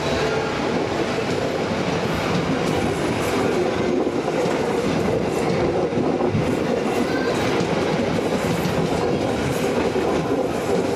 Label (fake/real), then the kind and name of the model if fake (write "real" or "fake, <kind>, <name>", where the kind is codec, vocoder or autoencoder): real